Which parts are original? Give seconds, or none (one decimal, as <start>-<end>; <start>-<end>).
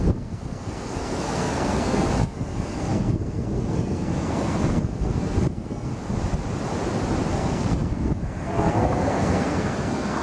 5.9-7.3